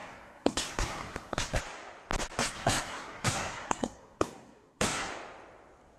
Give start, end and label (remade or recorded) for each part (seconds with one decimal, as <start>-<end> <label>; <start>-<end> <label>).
0.0-1.6 remade; 1.6-2.4 recorded; 2.4-5.1 remade; 5.1-6.0 recorded